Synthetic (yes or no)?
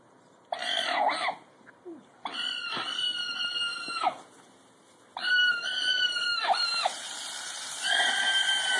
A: yes